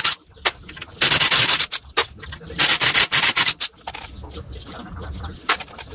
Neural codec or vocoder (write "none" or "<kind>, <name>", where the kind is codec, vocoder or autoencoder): vocoder, BigVGAN v2